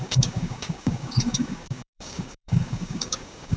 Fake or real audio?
fake